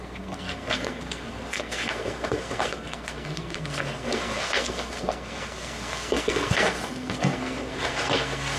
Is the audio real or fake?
fake